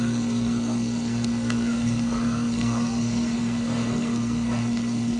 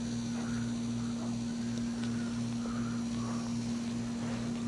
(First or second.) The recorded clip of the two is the second